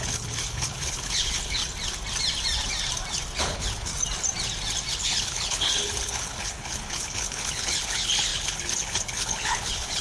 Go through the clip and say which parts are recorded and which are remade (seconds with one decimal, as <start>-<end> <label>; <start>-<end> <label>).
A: 0.0-1.6 remade; 1.6-3.4 recorded; 3.4-3.9 remade; 3.9-4.9 recorded; 4.9-10.0 remade